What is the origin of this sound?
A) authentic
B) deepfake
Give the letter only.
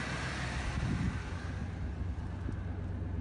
A